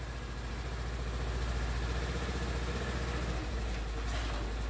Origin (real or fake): real